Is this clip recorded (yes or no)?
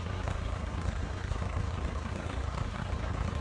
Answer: no